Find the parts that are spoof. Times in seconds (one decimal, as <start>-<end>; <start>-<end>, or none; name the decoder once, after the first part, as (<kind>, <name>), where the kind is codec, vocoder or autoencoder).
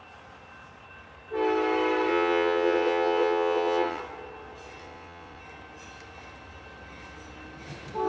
2.1-4.0 (vocoder, WaveNeXt); 4.8-5.4